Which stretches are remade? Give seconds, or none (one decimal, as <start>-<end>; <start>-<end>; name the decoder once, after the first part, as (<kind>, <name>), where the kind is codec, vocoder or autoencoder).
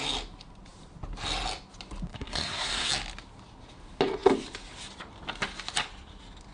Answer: 2.1-2.9 (codec, SNAC)